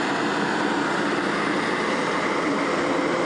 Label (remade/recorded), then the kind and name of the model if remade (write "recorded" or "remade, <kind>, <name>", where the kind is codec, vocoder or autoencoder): recorded